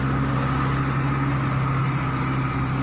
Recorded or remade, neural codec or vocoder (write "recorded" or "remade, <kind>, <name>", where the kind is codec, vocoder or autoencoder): recorded